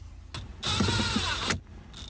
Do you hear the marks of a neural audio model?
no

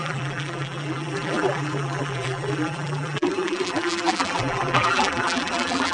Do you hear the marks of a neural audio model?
yes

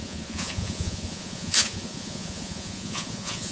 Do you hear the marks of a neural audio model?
yes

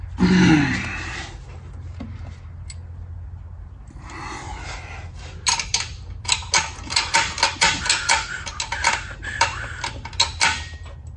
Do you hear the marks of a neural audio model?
no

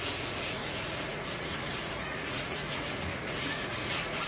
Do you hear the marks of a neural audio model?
yes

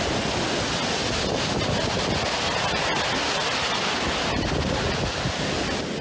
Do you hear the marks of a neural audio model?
no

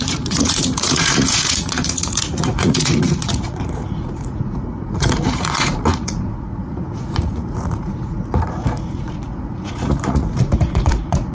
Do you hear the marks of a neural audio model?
yes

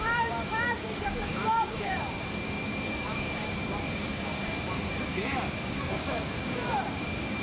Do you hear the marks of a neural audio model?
yes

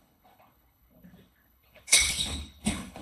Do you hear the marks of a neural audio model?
yes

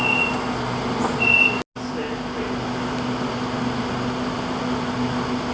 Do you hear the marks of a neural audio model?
no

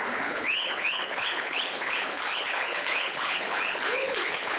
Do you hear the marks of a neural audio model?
yes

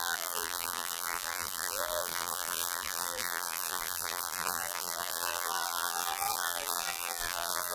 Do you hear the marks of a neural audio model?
yes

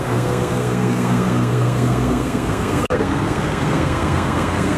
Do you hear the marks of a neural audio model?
yes